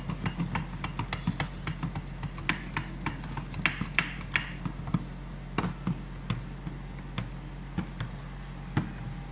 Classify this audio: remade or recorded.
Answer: recorded